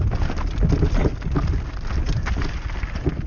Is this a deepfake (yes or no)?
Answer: no